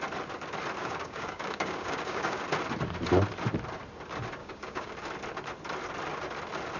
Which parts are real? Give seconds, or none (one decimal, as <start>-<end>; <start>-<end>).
0.0-0.8; 2.4-4.4; 4.9-6.8

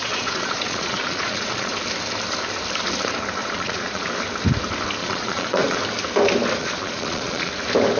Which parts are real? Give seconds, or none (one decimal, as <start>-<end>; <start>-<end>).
1.7-3.4; 4.1-5.0; 5.8-6.6; 7.5-8.0

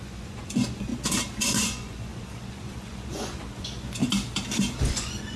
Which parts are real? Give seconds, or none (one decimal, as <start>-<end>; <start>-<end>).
0.9-1.4; 4.0-4.8

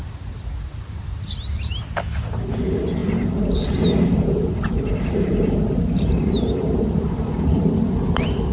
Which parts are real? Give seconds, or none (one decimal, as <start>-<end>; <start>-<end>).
0.0-3.0; 7.7-8.5

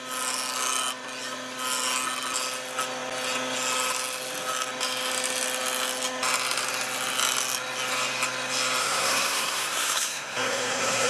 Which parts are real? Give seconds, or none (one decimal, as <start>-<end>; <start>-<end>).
0.0-8.8

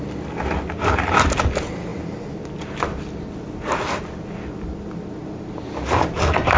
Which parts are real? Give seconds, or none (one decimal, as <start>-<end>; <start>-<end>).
0.0-6.6

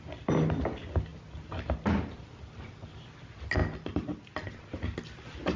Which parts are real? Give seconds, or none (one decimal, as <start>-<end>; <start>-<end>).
0.0-5.6